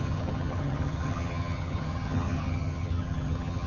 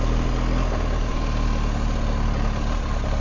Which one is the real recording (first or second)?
second